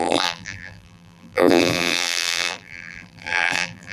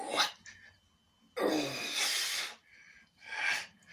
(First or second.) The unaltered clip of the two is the second